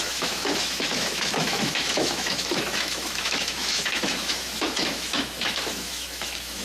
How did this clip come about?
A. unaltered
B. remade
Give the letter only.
B